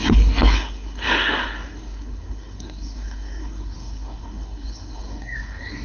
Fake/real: fake